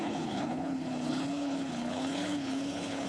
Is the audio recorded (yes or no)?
no